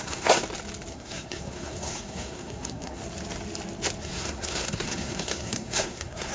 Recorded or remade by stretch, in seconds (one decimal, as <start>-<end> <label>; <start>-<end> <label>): 0.0-0.4 remade; 0.4-0.9 recorded; 0.9-3.0 remade; 3.0-4.0 recorded; 4.0-6.3 remade